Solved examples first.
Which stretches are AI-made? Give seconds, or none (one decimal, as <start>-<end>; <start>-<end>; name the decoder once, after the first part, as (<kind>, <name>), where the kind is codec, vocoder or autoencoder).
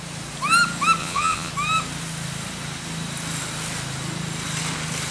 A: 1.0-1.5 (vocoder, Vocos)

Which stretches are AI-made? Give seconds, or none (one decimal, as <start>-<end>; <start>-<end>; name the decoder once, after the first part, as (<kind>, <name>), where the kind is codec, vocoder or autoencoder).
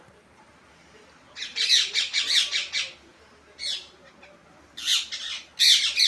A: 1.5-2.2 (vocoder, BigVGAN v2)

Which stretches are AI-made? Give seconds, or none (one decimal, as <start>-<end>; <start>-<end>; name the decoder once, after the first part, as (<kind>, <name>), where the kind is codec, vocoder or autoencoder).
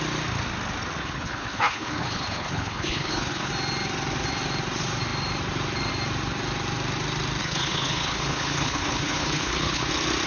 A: 1.0-3.5 (codec, HILCodec); 7.4-9.9